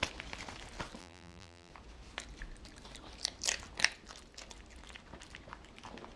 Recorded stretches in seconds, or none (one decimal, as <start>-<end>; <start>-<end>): 0.0-1.0; 1.7-6.2